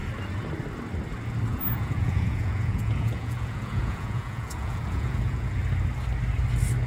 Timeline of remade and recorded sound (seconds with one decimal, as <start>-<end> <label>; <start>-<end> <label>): 0.0-1.5 recorded; 1.5-5.6 remade; 5.6-6.9 recorded